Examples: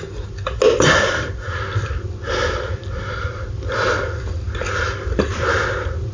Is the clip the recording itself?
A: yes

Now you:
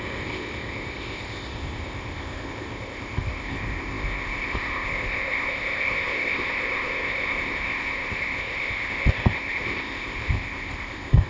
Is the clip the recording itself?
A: no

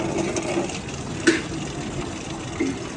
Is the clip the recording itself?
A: yes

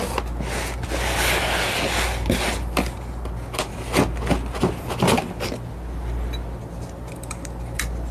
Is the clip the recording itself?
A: yes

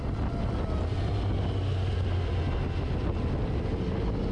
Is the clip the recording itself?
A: yes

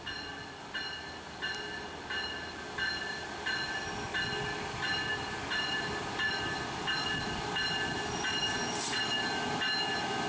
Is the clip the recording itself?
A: yes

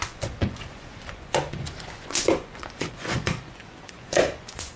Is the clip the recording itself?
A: no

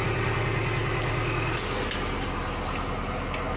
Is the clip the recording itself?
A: yes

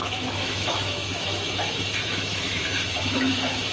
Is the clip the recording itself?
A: no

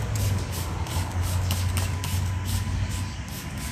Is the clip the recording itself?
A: no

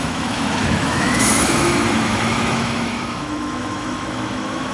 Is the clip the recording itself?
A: no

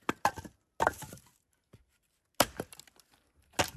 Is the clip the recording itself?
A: yes